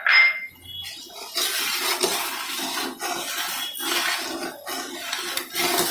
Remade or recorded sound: recorded